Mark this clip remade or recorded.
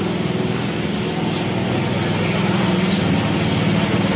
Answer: recorded